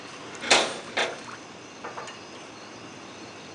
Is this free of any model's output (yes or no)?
yes